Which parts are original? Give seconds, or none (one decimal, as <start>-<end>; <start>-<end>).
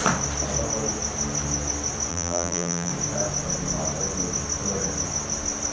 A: 0.0-2.1; 2.9-5.7